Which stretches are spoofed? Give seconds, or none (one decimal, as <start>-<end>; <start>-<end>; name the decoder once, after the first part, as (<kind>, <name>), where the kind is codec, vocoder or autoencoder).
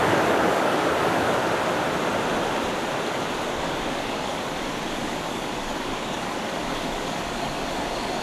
0.0-1.4 (codec, DAC); 3.4-8.2